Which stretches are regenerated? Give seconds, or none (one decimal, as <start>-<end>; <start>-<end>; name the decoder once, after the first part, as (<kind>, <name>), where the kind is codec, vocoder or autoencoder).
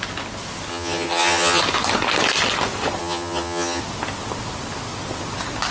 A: 0.7-1.6 (vocoder, HiFi-GAN); 3.0-3.8